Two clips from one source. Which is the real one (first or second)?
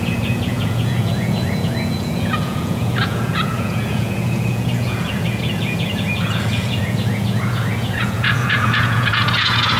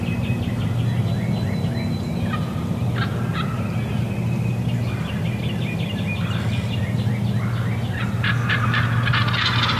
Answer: second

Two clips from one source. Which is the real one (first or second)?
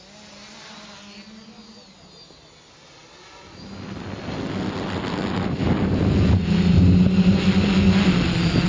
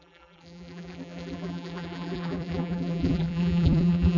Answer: first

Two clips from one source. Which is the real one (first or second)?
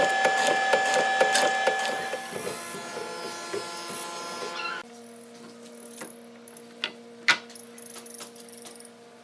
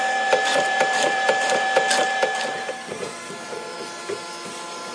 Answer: first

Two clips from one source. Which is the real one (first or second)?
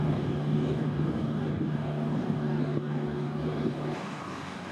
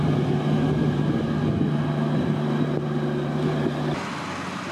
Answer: second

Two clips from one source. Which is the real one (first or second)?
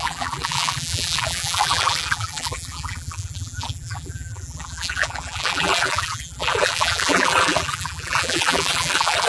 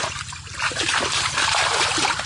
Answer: second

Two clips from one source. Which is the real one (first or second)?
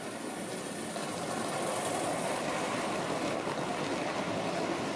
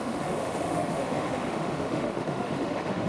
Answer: first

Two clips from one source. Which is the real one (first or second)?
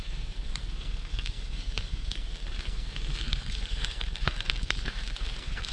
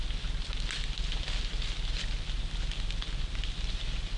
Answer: second